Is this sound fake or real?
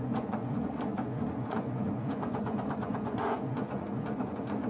fake